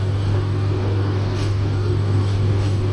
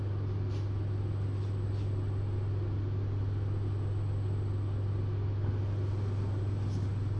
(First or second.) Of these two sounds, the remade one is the first